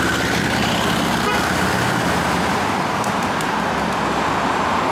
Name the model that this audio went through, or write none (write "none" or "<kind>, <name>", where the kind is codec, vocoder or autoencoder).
none